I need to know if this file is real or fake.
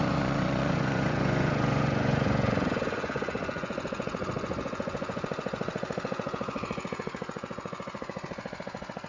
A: fake